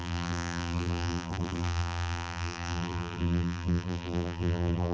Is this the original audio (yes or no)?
no